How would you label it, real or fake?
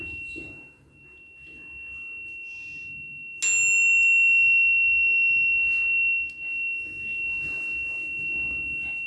real